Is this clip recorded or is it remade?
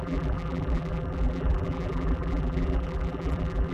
remade